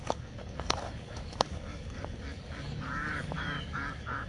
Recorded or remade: remade